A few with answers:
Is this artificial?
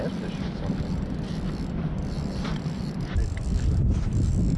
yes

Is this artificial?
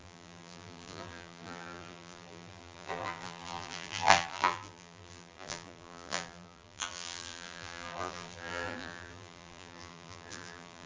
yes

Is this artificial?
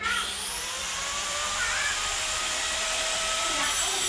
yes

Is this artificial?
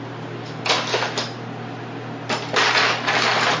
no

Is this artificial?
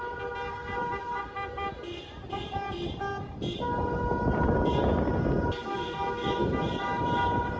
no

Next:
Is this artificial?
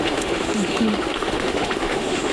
yes